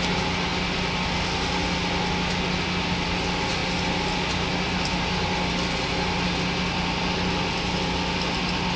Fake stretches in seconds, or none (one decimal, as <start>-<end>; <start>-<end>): none